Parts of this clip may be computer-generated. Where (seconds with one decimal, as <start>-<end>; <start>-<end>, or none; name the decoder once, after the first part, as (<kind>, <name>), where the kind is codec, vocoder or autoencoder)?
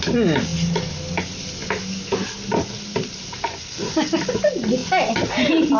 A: none